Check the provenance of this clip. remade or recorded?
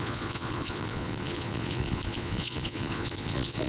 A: remade